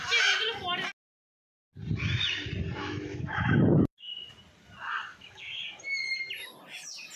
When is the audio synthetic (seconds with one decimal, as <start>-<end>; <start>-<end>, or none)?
2.8-4.3; 5.1-5.6